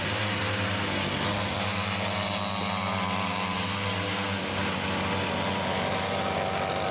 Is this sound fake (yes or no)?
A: no